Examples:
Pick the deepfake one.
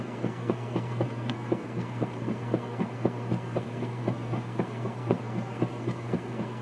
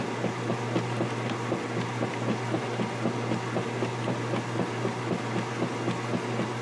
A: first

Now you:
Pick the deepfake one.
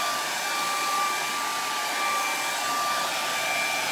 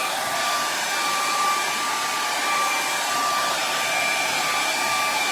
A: second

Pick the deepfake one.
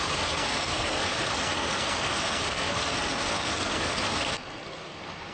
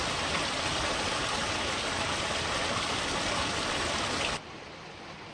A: first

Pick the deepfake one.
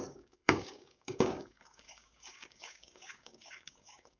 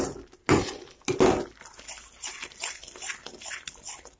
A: first